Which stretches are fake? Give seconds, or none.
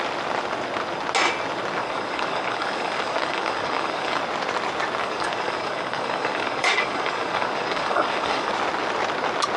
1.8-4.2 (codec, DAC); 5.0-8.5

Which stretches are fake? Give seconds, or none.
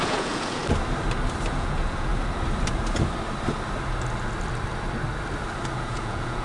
0.0-0.6 (vocoder, Vocos); 1.5-2.1; 5.8-6.4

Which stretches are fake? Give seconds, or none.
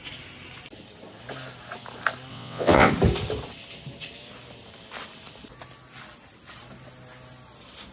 2.3-2.9 (vocoder, WaveNeXt)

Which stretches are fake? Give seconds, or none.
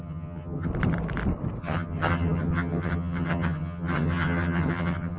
0.0-0.7 (vocoder, HiFi-GAN); 1.6-5.2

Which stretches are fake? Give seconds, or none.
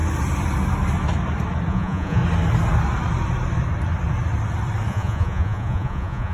1.7-2.2 (vocoder, Vocos); 4.9-6.3